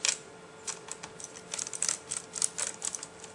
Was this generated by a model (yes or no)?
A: no